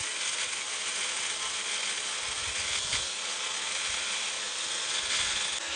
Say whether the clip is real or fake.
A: real